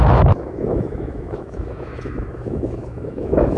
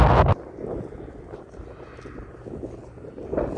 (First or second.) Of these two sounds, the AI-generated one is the first